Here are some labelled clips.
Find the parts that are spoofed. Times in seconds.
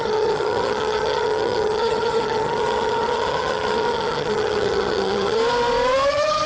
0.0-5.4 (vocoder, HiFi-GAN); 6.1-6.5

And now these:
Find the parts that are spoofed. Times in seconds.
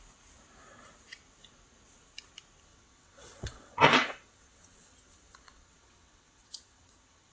2.7-7.3 (vocoder, WaveNeXt)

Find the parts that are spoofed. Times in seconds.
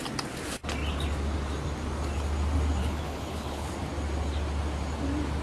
2.8-3.7 (codec, HILCodec)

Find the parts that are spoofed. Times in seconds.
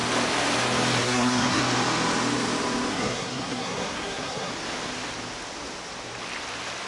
1.0-1.6 (codec, SNAC); 2.9-4.5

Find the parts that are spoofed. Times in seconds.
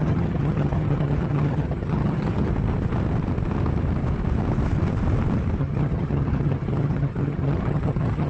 0.0-2.5 (vocoder, HiFi-GAN); 5.6-8.3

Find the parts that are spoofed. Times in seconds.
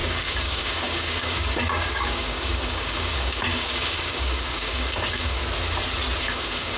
0.0-5.4 (codec, DAC); 6.2-6.8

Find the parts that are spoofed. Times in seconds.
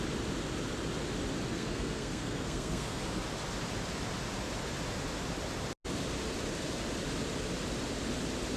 1.5-3.0 (codec, SNAC)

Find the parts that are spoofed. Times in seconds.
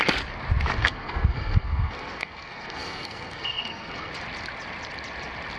0.8-4.1 (codec, SNAC)